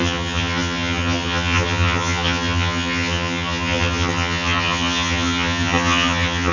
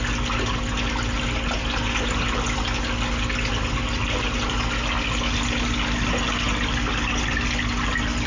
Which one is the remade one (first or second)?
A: first